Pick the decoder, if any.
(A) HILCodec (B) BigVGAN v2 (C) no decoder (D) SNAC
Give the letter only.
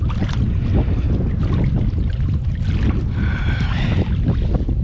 C